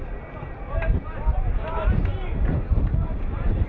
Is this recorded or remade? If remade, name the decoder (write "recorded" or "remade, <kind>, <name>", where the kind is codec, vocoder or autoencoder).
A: recorded